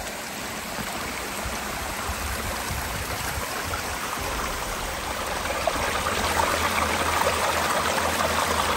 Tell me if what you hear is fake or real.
fake